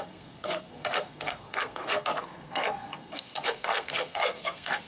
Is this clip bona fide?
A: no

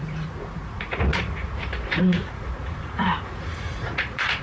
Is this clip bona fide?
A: no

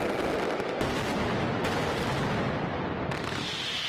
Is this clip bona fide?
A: yes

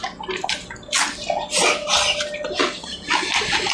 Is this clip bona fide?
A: yes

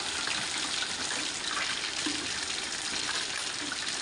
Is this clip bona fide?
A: yes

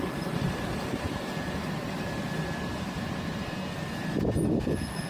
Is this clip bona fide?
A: no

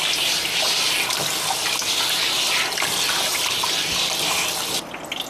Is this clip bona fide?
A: yes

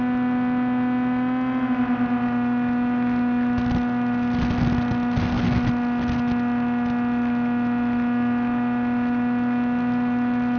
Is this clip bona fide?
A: yes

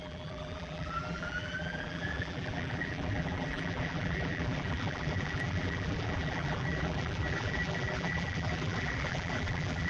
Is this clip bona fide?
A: no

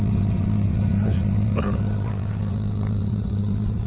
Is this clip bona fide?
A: no